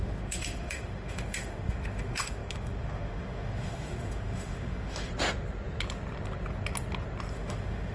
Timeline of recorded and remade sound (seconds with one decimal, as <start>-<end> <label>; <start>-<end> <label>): 0.0-5.1 remade; 5.1-7.3 recorded; 7.3-7.9 remade